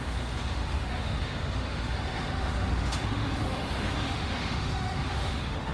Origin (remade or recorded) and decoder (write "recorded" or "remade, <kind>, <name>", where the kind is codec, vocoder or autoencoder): remade, autoencoder, DAC-VAE